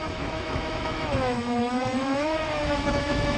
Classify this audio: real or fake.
fake